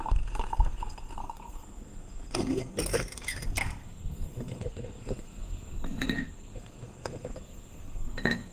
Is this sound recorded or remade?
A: remade